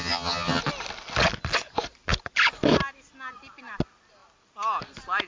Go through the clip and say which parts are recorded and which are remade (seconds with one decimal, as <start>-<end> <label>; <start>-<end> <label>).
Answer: 0.0-0.6 remade; 0.6-5.3 recorded